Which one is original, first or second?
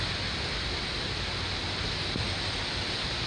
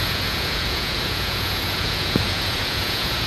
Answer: first